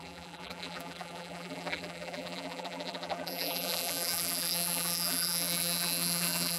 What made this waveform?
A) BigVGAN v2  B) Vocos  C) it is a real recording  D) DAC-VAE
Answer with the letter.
A